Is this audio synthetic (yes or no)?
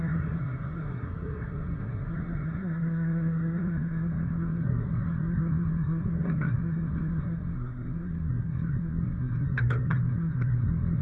yes